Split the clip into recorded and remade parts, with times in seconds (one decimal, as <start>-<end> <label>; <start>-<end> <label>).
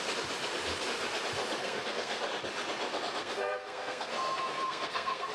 0.0-1.6 recorded; 1.6-2.2 remade; 2.2-3.2 recorded; 3.2-5.3 remade